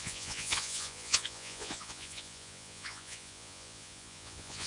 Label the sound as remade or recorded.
remade